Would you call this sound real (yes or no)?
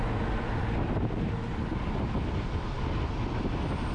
yes